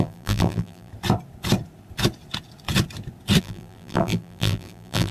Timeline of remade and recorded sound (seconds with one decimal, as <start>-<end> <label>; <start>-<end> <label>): 0.0-0.9 remade; 0.9-3.4 recorded; 3.4-5.1 remade